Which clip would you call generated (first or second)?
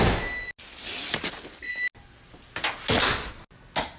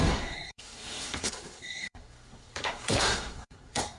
second